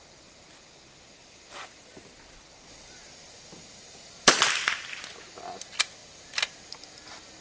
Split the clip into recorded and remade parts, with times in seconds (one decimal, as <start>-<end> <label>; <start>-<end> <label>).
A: 0.0-1.2 recorded; 1.2-4.6 remade; 4.6-7.4 recorded